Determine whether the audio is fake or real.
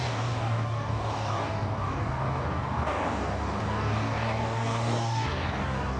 fake